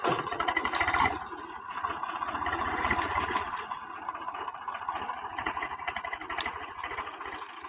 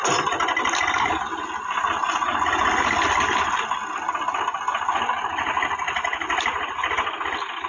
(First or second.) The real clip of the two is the second